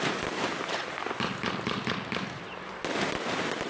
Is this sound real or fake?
real